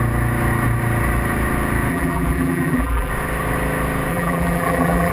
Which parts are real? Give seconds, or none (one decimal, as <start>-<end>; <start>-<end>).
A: 0.0-1.9; 3.1-4.1